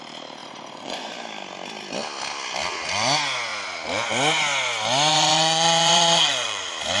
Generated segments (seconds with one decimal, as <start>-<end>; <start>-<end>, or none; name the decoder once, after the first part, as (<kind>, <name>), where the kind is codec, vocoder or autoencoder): 0.4-1.1 (vocoder, Vocos); 5.1-6.6